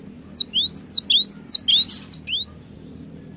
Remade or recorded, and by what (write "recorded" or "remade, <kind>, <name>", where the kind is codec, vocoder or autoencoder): recorded